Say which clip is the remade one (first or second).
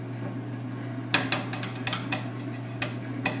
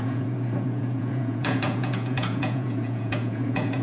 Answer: second